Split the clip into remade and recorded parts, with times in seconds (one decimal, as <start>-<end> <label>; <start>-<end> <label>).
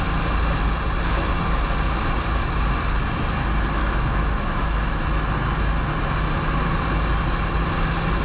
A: 0.0-3.8 recorded; 3.8-5.0 remade; 5.0-8.2 recorded